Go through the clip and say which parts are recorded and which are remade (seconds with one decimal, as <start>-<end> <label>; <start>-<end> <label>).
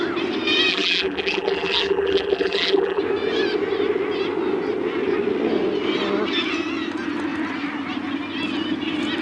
0.0-0.7 recorded; 0.7-3.0 remade; 3.0-9.2 recorded